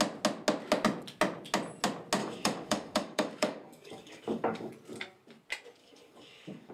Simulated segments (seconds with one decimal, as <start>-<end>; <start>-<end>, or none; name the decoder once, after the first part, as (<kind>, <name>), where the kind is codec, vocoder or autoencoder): 2.2-4.7 (codec, DAC); 5.8-6.7